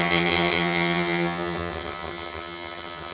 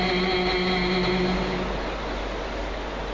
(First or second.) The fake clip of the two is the first